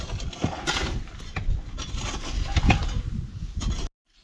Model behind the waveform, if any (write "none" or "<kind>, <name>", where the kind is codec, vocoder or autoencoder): none